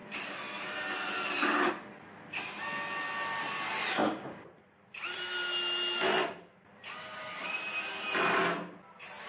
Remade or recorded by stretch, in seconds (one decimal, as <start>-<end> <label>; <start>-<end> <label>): 0.0-9.3 recorded